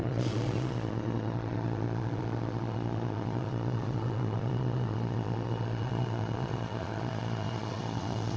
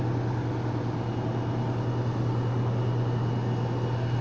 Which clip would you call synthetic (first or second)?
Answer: first